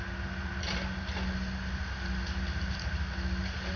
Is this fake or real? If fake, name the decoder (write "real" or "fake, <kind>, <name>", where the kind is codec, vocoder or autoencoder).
real